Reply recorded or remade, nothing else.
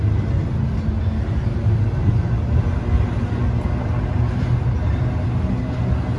recorded